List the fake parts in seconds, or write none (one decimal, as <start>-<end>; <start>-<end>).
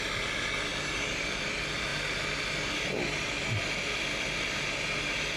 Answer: none